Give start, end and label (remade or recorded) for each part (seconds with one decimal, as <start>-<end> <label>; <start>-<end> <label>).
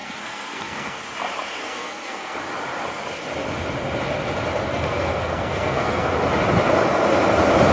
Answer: 0.0-1.0 remade; 1.0-1.6 recorded; 1.6-2.4 remade; 2.4-4.7 recorded; 4.7-6.1 remade; 6.1-7.7 recorded